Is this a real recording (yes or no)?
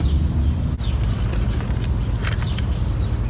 yes